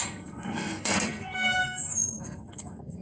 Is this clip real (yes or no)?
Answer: no